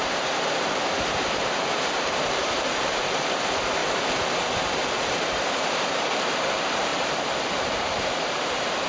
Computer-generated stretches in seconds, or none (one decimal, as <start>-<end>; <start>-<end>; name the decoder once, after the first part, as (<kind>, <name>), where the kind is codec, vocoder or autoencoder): 0.0-3.8 (vocoder, BigVGAN v2); 5.2-8.9